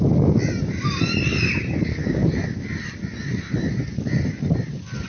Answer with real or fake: real